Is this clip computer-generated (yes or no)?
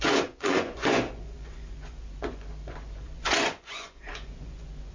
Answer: yes